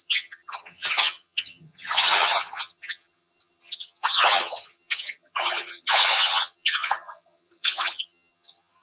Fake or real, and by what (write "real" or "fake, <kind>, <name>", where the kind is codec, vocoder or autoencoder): fake, vocoder, HiFi-GAN